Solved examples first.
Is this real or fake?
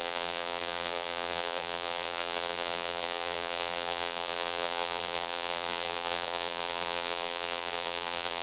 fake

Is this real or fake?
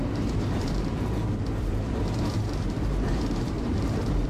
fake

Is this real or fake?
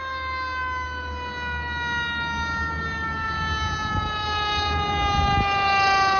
real